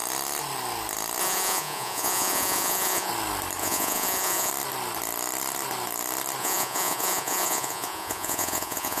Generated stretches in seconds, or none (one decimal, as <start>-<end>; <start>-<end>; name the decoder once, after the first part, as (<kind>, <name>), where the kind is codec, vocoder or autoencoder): 1.2-3.1 (vocoder, Vocos); 3.6-4.5; 6.4-9.0